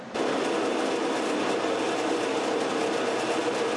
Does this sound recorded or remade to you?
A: recorded